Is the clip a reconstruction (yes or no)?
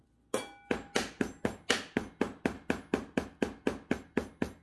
no